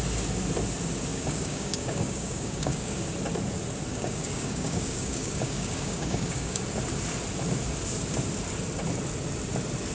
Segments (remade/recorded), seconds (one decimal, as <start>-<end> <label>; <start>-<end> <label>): 0.0-1.1 recorded; 1.1-3.0 remade; 3.0-3.9 recorded; 3.9-6.6 remade; 6.6-9.9 recorded